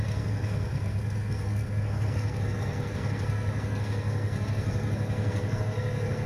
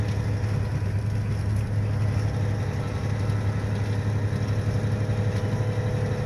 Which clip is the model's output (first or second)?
first